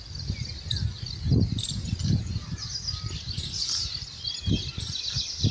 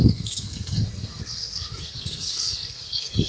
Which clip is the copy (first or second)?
second